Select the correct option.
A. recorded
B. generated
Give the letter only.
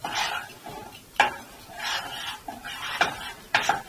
B